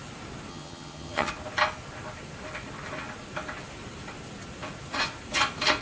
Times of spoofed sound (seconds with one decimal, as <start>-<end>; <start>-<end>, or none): 0.5-1.3

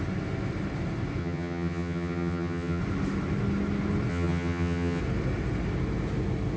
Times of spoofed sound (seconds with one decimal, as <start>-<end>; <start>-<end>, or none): 1.2-2.8; 4.1-5.0

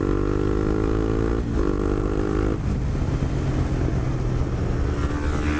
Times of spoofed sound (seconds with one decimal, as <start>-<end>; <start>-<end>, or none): none